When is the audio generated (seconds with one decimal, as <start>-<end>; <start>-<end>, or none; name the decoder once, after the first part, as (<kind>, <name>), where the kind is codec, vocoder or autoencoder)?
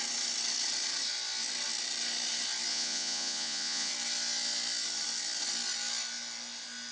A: 2.7-3.9 (vocoder, Vocos)